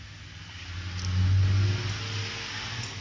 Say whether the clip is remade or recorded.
recorded